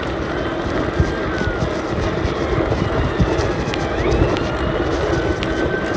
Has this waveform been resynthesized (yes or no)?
no